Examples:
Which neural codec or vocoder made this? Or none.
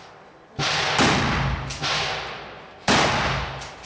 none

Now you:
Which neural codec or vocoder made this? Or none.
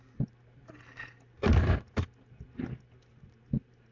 none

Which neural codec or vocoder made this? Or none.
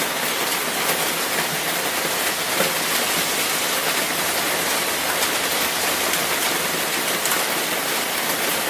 none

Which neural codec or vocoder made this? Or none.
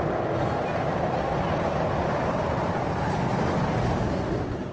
none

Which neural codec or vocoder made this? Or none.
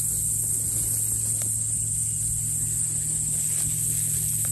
none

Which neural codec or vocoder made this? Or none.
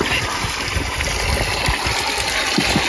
none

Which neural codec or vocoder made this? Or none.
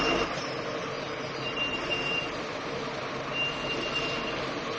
none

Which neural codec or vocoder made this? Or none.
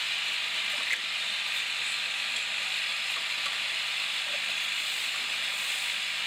none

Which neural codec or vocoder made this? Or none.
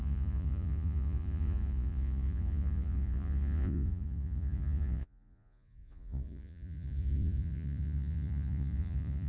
vocoder, Vocos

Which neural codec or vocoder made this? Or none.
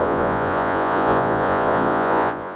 vocoder, Vocos